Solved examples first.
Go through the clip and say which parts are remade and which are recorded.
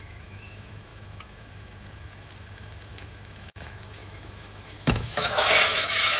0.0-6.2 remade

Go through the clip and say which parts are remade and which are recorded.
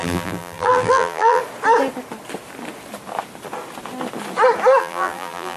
0.0-1.4 remade; 1.4-4.8 recorded; 4.8-5.6 remade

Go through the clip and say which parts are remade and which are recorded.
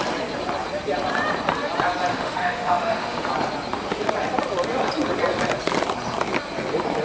0.0-2.1 recorded; 2.1-3.3 remade; 3.3-7.0 recorded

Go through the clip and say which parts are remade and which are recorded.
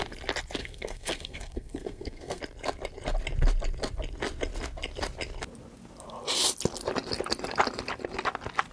0.0-0.6 recorded; 0.6-2.4 remade; 2.4-8.7 recorded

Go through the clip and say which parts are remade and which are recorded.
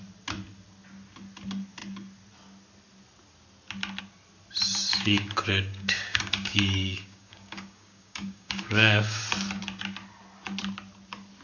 0.0-4.9 recorded; 4.9-9.2 remade; 9.2-11.4 recorded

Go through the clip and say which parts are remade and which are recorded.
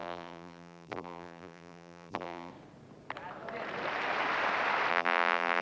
0.0-2.5 remade; 2.5-4.9 recorded; 4.9-5.6 remade